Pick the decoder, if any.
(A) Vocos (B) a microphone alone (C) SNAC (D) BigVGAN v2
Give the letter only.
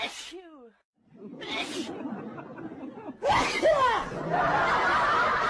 B